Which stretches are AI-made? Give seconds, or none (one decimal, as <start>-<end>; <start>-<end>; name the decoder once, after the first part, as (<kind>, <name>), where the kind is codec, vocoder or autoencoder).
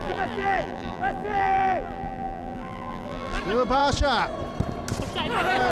0.0-3.4 (vocoder, BigVGAN v2)